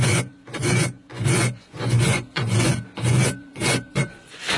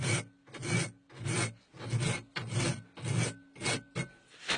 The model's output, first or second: first